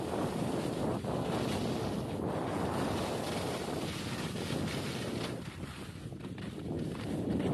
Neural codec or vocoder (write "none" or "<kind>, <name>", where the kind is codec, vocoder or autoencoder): none